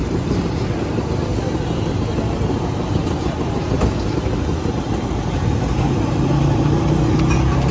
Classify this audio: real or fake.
real